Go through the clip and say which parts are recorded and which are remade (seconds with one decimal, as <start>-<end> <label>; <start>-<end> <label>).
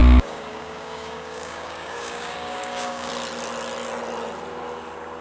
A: 0.0-3.1 remade; 3.1-5.2 recorded